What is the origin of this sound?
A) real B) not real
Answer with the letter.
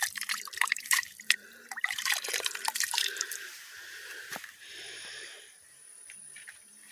B